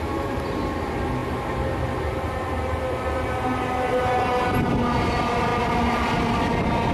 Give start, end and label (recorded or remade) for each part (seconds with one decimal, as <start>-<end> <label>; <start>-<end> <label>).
0.0-6.9 recorded